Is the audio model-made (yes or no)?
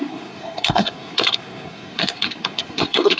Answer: yes